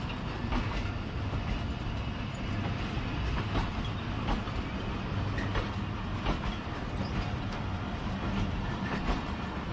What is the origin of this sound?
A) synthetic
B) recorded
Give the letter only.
B